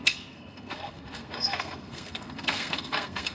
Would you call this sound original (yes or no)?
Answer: no